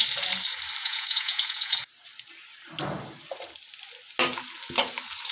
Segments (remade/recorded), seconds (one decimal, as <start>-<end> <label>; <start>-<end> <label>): 0.0-0.8 recorded; 0.8-1.8 remade; 1.8-5.3 recorded